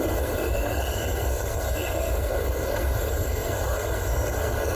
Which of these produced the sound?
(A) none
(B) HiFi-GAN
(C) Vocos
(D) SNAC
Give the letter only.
D